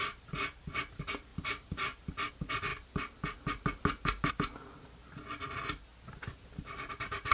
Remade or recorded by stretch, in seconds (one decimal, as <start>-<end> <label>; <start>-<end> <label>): 0.0-2.7 remade; 2.7-4.3 recorded; 4.3-5.9 remade; 5.9-6.5 recorded; 6.5-7.3 remade